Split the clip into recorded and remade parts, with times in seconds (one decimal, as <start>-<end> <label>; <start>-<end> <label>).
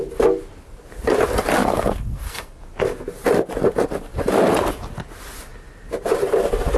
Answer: 0.0-1.6 recorded; 1.6-2.6 remade; 2.6-6.8 recorded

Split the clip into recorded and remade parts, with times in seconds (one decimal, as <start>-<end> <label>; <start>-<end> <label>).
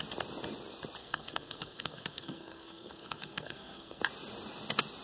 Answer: 0.0-1.0 recorded; 1.0-4.0 remade; 4.0-5.0 recorded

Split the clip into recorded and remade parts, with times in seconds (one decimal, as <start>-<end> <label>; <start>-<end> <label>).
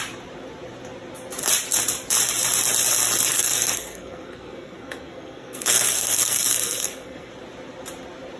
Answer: 0.0-3.3 recorded; 3.3-7.3 remade; 7.3-8.4 recorded